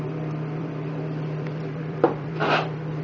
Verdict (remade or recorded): remade